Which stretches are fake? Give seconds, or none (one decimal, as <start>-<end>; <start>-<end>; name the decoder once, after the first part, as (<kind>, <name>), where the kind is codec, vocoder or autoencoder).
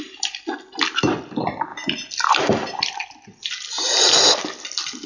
none